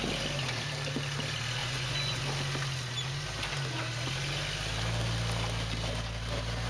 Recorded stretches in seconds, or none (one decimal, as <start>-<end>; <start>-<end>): 0.0-1.6; 2.2-6.7